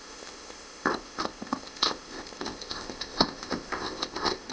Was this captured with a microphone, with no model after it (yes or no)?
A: no